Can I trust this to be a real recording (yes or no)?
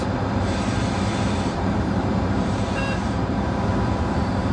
no